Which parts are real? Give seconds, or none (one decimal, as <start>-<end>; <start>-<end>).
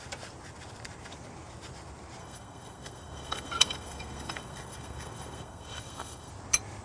0.0-2.2; 6.3-6.8